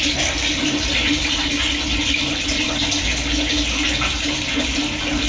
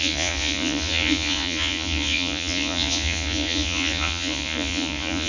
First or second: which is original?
first